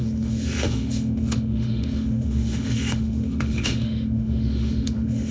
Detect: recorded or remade remade